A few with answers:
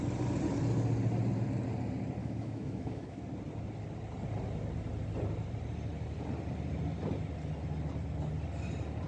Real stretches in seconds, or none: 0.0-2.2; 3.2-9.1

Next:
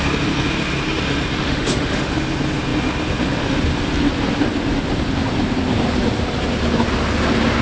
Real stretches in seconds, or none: 0.0-1.4; 2.1-7.6

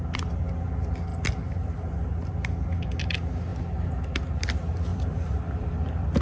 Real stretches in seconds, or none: 0.0-1.1; 2.3-4.9

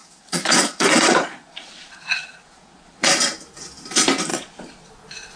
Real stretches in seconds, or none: 3.1-4.3; 4.9-5.4

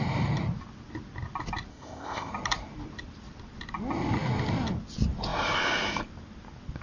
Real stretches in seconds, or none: 0.0-1.7; 2.3-6.8

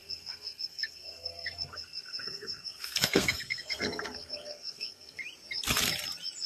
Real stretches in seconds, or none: 5.2-6.5

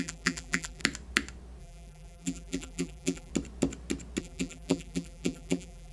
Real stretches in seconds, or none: 0.8-1.6; 3.3-4.2